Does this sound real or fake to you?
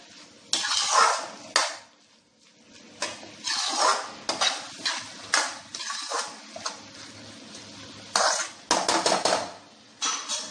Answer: real